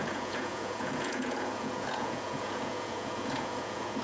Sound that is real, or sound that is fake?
fake